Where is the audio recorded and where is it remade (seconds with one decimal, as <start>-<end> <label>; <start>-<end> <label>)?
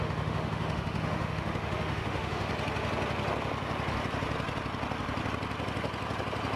0.0-2.5 remade; 2.5-6.6 recorded